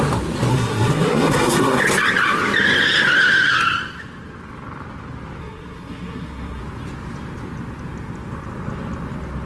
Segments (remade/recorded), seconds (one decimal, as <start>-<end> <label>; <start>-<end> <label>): 0.0-0.5 recorded; 0.5-1.8 remade; 1.8-5.4 recorded; 5.4-6.6 remade; 6.6-9.4 recorded